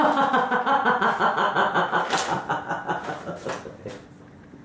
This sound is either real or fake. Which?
real